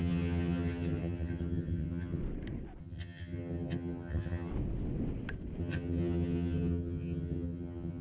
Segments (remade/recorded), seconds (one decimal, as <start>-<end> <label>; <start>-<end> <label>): 0.0-2.2 remade; 2.2-2.8 recorded; 2.8-4.5 remade; 4.5-5.6 recorded; 5.6-8.0 remade